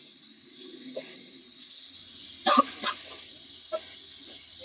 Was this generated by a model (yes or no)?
no